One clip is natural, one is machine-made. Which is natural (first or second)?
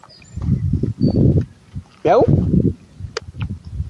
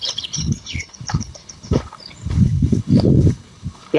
first